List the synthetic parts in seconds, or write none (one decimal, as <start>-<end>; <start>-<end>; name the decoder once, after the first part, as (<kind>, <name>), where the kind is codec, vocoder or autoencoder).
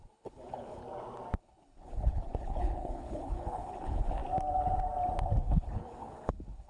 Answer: 0.0-0.8 (codec, HILCodec); 1.4-4.2; 5.4-6.7